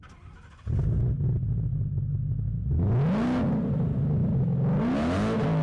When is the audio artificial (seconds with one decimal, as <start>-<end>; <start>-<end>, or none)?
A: none